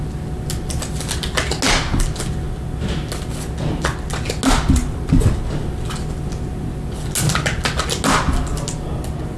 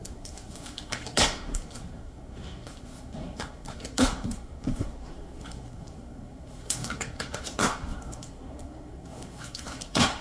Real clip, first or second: first